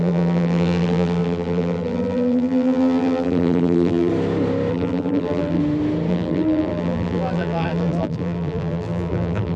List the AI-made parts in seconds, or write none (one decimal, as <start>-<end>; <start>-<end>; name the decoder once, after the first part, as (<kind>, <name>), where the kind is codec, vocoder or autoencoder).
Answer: 0.0-4.1 (vocoder, BigVGAN v2); 4.7-5.6; 6.1-9.6